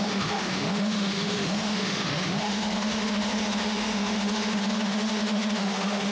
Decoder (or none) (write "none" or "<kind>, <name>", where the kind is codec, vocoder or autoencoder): autoencoder, DAC-VAE